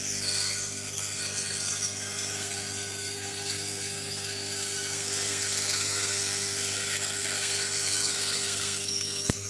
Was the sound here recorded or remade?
remade